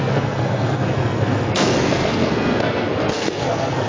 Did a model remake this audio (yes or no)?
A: yes